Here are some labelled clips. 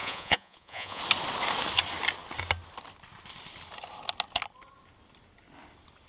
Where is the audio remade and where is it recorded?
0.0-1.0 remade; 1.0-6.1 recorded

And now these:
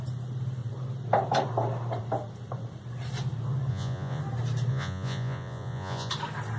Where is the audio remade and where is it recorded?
0.0-3.7 recorded; 3.7-4.2 remade; 4.2-4.7 recorded; 4.7-6.1 remade; 6.1-6.6 recorded

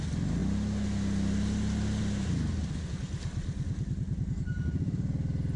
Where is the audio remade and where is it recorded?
0.0-5.6 recorded

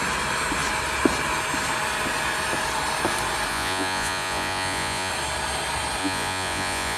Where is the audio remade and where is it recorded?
0.0-3.5 recorded; 3.5-5.1 remade; 5.1-6.0 recorded; 6.0-7.0 remade